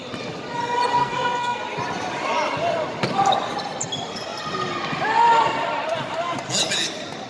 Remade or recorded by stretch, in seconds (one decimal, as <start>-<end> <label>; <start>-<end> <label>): 0.0-1.0 recorded; 1.0-1.6 remade; 1.6-7.3 recorded